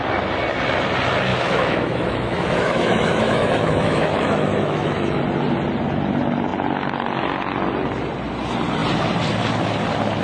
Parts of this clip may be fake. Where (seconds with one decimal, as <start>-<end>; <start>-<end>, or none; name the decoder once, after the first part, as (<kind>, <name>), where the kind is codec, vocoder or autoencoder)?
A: 1.3-5.2 (autoencoder, DAC-VAE)